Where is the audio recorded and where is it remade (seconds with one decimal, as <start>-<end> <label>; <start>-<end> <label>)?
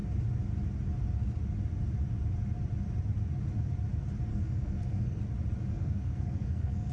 0.0-4.3 recorded; 4.3-5.2 remade; 5.2-5.7 recorded; 5.7-6.9 remade